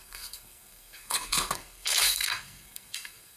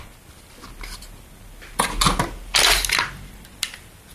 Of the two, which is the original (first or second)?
second